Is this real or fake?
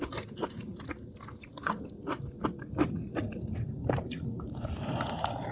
real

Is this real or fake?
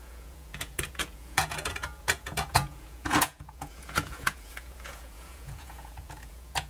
fake